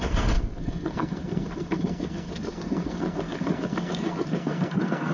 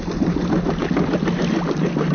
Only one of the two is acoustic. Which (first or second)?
second